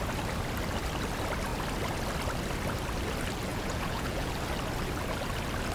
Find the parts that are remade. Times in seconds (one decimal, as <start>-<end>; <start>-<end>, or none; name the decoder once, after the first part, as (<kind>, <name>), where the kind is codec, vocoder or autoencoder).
3.5-4.3 (vocoder, Vocos)

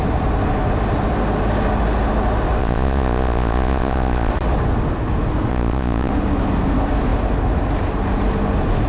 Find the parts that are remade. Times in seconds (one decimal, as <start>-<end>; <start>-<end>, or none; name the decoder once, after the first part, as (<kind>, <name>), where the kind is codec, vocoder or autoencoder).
2.6-4.3 (vocoder, Vocos); 5.5-6.1

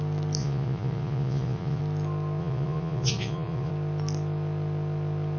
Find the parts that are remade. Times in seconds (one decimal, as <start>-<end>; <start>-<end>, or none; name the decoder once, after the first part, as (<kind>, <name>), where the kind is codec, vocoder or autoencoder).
0.4-1.8 (vocoder, Vocos); 2.4-3.7

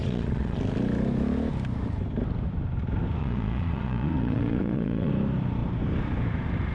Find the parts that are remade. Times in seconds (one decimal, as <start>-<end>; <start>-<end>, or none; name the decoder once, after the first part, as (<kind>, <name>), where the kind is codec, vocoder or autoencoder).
0.0-0.6 (vocoder, Vocos); 3.2-5.1

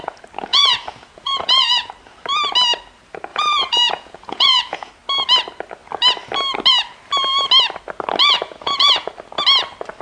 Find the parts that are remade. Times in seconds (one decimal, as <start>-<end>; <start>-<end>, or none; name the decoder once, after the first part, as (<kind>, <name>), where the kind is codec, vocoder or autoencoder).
0.5-1.9 (vocoder, Vocos); 3.3-4.9; 8.2-9.1

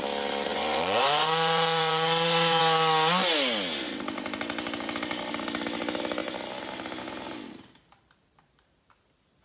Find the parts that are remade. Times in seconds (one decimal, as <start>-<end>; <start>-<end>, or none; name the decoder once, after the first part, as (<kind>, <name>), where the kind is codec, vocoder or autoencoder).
0.5-2.6 (vocoder, Vocos)

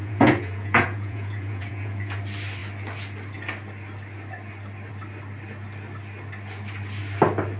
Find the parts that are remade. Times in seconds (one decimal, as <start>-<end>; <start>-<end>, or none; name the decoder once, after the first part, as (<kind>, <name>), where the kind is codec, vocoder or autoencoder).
0.0-2.2 (vocoder, Vocos)